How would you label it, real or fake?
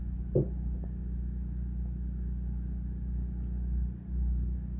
real